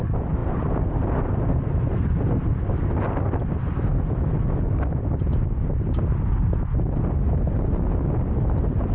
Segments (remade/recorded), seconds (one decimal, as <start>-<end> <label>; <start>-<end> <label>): 0.0-8.9 recorded